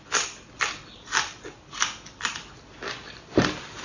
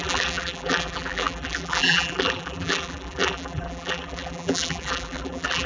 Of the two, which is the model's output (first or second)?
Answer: second